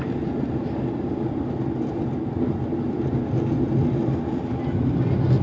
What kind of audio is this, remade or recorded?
recorded